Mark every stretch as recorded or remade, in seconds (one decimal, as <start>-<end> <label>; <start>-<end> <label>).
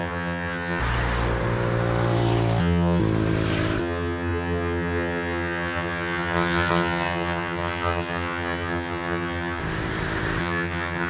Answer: 0.0-0.8 remade; 0.8-2.6 recorded; 2.6-3.0 remade; 3.0-3.8 recorded; 3.8-9.6 remade; 9.6-10.4 recorded; 10.4-11.1 remade